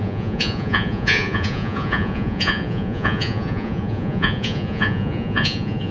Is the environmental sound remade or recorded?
remade